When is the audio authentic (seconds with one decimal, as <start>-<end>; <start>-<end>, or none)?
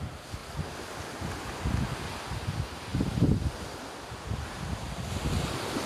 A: 0.0-5.9